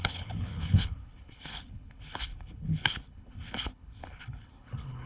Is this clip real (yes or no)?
no